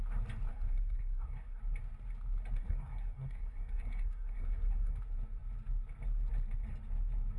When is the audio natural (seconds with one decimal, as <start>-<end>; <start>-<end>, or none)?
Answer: 0.0-0.5; 1.6-2.6; 5.0-7.4